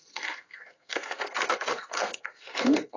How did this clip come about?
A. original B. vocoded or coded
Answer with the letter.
B